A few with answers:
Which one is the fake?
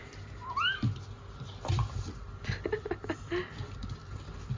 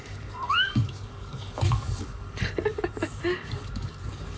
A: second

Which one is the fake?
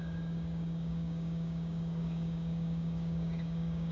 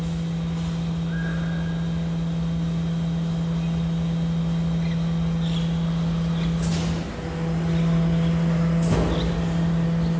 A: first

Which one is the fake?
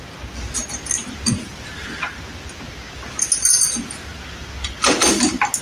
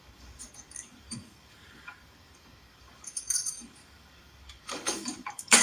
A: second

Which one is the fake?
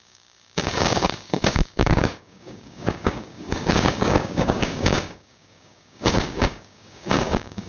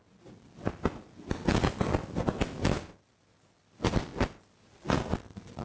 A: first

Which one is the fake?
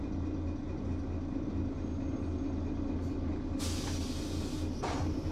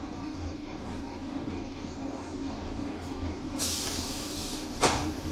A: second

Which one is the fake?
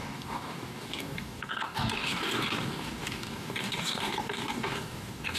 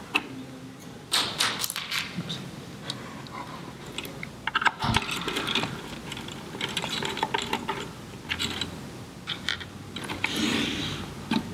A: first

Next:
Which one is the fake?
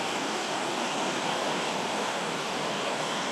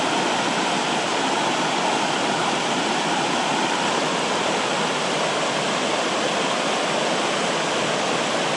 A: first